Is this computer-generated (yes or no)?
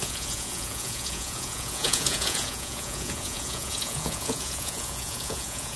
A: yes